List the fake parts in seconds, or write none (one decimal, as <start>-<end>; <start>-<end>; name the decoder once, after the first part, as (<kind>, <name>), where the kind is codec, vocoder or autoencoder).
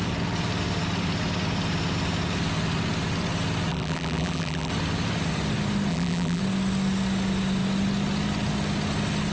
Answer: 3.7-4.7 (vocoder, BigVGAN v2); 5.9-6.4